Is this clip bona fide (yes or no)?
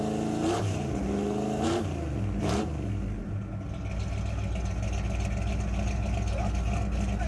yes